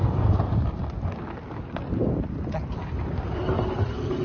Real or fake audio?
real